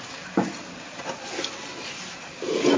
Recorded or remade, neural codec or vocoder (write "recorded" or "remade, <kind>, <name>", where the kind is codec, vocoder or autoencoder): recorded